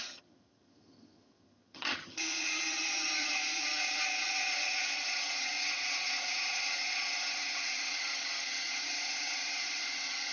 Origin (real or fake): fake